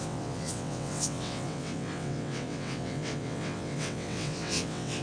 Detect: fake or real fake